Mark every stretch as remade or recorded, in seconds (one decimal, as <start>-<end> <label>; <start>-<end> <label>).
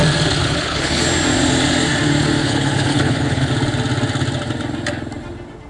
0.0-0.4 recorded; 0.4-1.0 remade; 1.0-2.4 recorded; 2.4-3.5 remade; 3.5-5.7 recorded